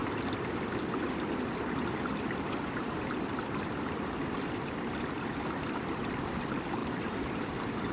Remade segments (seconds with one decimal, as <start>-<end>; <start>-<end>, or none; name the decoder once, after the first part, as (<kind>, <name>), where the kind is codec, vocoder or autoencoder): 0.0-6.8 (vocoder, BigVGAN v2); 7.4-7.9